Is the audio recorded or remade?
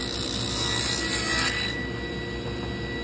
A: recorded